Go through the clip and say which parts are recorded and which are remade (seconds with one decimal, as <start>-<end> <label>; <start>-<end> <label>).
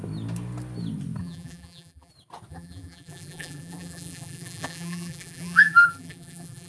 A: 0.0-1.2 recorded; 1.2-2.1 remade; 2.1-2.5 recorded; 2.5-6.7 remade